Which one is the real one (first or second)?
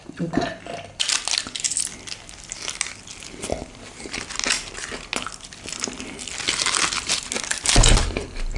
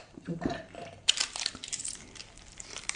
first